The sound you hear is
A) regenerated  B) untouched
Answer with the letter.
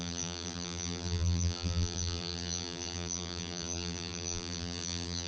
A